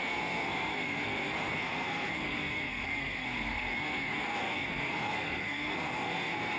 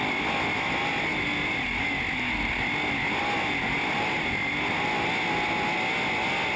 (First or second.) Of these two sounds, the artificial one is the first